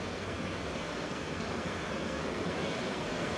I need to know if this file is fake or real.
fake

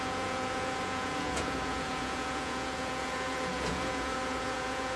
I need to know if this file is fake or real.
fake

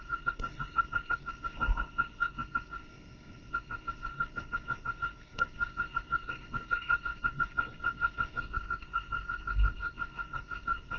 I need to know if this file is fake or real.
fake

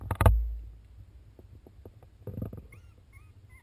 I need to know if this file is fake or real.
real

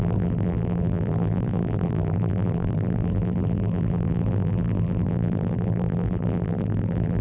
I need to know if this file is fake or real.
fake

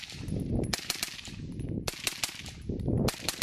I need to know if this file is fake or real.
fake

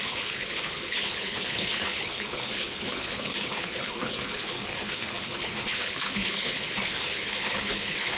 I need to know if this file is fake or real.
fake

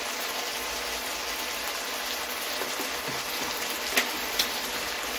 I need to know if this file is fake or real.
real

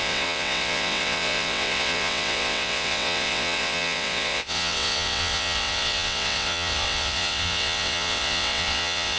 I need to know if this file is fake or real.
fake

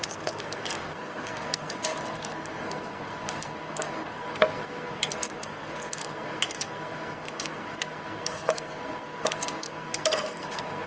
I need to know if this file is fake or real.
fake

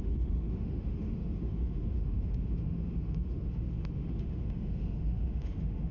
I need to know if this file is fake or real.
fake